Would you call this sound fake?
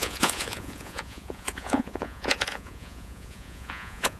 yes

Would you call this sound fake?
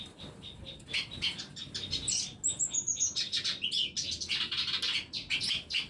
no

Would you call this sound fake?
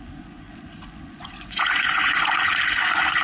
yes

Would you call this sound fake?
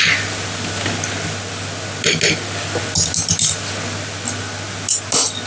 no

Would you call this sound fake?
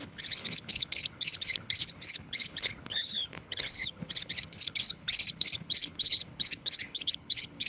yes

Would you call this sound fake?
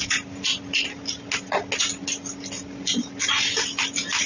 no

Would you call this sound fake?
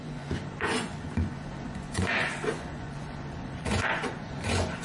yes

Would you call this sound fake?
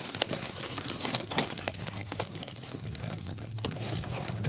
yes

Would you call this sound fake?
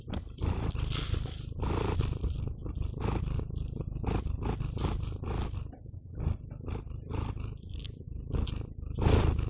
no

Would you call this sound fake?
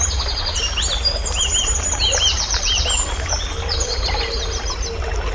no